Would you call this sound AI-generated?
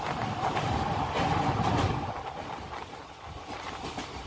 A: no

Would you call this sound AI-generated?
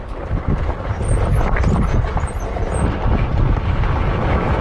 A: no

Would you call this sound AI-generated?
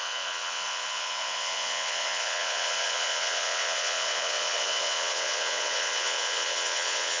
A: yes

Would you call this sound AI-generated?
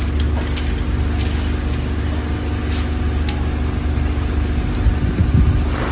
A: no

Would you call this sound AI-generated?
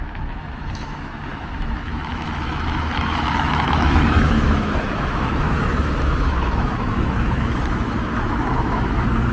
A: yes